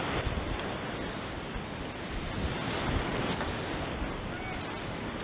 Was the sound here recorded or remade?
recorded